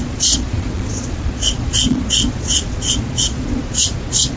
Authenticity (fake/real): fake